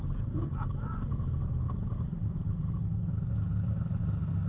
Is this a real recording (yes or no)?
yes